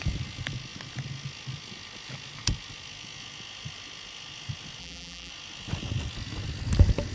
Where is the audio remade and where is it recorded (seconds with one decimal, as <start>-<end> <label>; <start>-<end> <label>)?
0.0-4.8 recorded; 4.8-5.3 remade; 5.3-7.1 recorded